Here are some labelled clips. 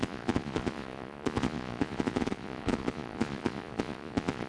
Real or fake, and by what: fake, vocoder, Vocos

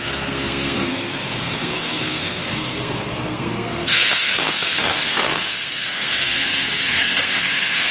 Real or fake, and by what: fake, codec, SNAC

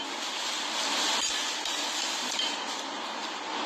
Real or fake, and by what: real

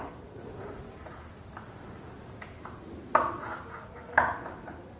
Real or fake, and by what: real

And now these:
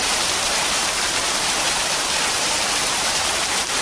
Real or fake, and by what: fake, vocoder, BigVGAN v2